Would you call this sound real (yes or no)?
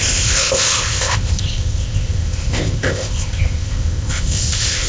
no